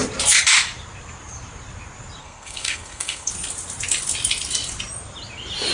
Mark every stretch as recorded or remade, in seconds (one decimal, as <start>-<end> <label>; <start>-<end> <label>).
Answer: 0.0-2.2 recorded; 2.2-3.3 remade; 3.3-5.7 recorded